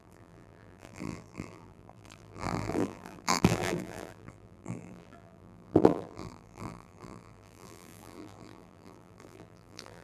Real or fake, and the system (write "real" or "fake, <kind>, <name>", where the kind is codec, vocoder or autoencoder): fake, vocoder, BigVGAN v2